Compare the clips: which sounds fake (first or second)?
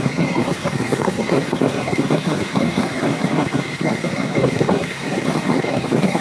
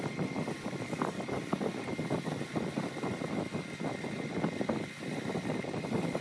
first